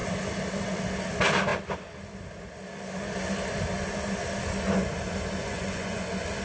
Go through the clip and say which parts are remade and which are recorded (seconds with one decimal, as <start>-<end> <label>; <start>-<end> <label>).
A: 0.0-5.4 recorded; 5.4-6.0 remade; 6.0-6.4 recorded